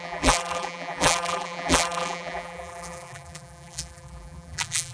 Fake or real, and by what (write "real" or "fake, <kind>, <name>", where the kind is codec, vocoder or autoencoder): fake, vocoder, BigVGAN v2